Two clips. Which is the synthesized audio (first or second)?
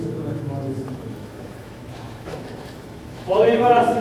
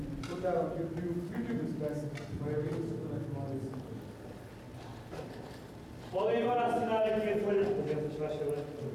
first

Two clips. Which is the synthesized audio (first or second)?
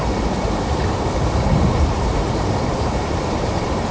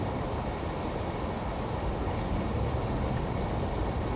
first